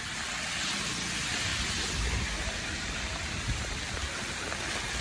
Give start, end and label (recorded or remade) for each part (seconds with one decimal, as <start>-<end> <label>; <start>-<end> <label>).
0.0-5.0 recorded